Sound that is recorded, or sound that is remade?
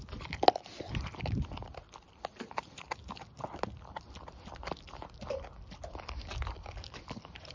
recorded